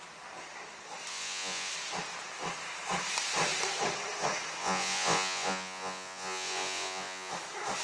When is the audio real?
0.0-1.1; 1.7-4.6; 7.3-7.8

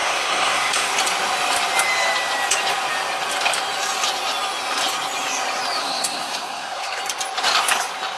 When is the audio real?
0.9-5.8; 7.0-8.2

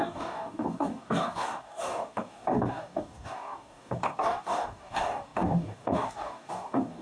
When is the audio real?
none

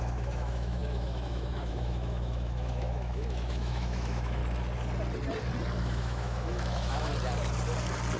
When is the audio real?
4.4-5.8; 7.1-8.2

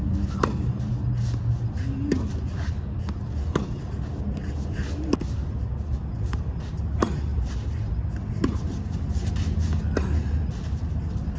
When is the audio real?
0.0-11.4

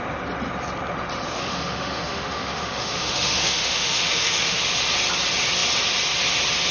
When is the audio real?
0.0-1.4; 4.6-6.7

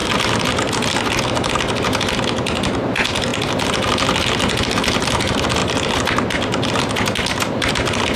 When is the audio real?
0.0-8.2

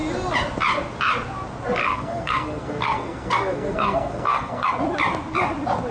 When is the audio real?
0.0-1.8; 4.7-5.9